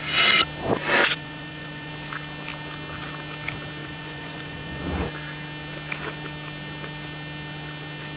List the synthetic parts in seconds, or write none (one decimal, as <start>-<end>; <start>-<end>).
1.0-1.9; 3.8-4.8